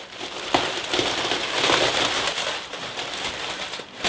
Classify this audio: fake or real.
real